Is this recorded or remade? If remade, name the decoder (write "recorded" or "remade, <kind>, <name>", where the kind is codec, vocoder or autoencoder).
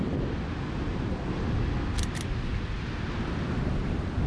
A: recorded